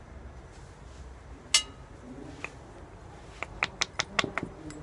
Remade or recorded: recorded